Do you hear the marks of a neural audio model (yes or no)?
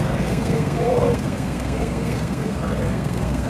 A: yes